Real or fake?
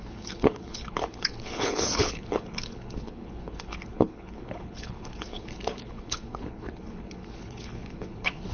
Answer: fake